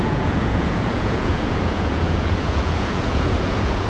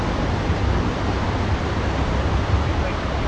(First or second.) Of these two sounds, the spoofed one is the first